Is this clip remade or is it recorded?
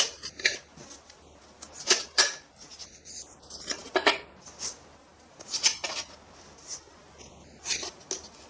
recorded